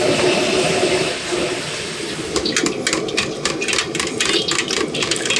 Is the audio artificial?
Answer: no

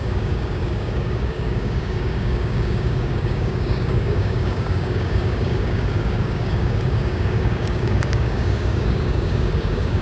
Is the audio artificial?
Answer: yes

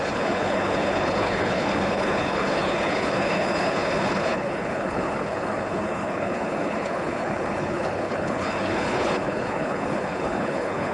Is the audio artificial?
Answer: yes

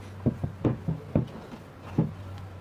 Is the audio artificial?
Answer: no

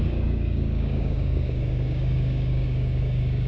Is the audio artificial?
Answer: yes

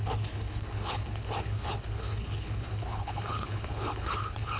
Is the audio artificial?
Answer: yes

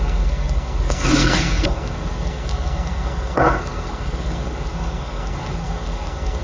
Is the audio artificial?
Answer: yes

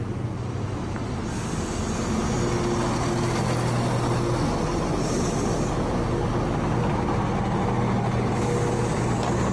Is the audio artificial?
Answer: no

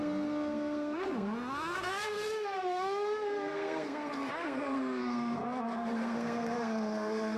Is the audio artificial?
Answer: yes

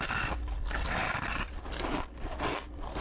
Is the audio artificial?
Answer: yes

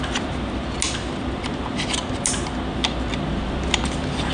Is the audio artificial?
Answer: no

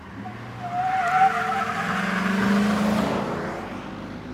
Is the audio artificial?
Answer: no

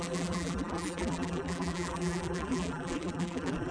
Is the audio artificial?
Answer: yes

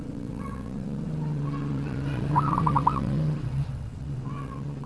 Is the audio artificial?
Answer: yes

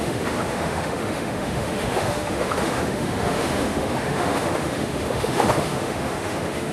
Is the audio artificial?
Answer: yes